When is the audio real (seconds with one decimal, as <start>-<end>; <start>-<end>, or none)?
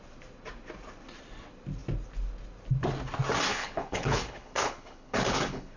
0.0-3.5